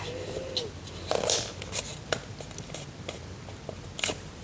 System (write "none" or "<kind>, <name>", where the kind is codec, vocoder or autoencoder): none